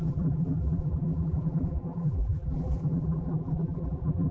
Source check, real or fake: fake